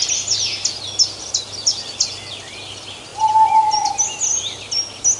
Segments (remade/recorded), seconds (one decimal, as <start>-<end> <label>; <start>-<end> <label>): 0.0-5.2 recorded